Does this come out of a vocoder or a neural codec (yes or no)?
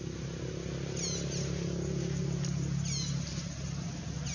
no